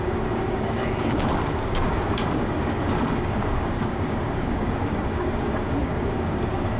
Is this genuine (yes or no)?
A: no